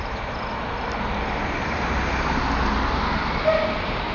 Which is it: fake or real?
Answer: real